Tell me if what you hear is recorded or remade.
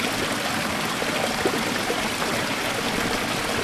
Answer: recorded